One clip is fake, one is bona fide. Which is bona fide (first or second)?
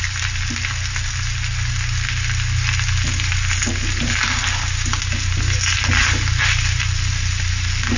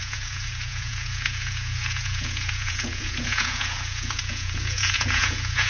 first